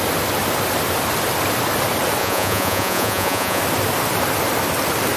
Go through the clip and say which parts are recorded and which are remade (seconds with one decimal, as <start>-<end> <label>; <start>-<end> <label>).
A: 0.0-2.2 recorded; 2.2-3.6 remade; 3.6-5.2 recorded